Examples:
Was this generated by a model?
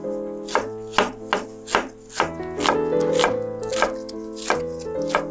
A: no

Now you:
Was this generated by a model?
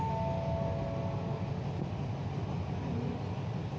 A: no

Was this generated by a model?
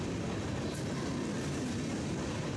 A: no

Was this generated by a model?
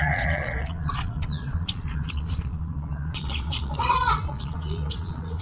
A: yes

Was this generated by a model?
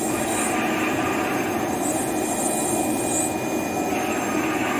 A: no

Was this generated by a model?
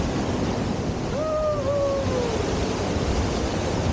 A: no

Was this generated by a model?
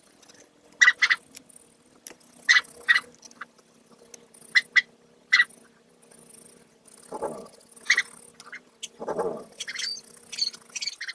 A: no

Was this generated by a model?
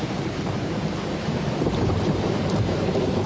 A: yes